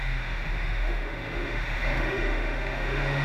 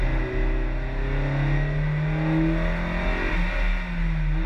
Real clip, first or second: second